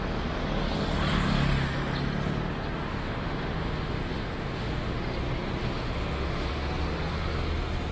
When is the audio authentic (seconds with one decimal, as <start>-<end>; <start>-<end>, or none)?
0.0-2.9; 5.0-5.6; 6.5-7.9